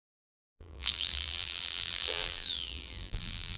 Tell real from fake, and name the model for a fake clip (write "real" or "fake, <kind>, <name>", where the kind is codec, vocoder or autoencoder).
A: fake, vocoder, BigVGAN v2